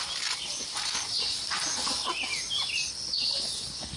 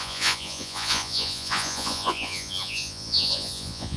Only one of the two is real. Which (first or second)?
first